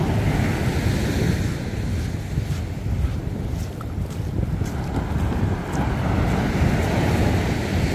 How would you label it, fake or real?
real